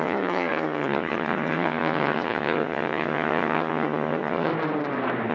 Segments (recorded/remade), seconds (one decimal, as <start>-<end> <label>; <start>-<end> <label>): 0.0-4.5 remade; 4.5-5.3 recorded